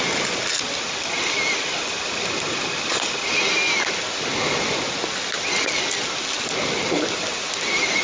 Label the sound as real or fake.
real